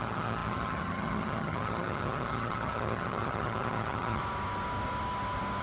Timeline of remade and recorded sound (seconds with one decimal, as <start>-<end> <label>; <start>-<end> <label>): 0.0-4.2 remade; 4.2-5.6 recorded